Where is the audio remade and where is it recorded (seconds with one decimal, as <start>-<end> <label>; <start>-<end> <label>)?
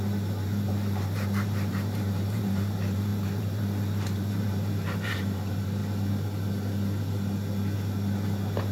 0.0-5.8 remade; 5.8-8.7 recorded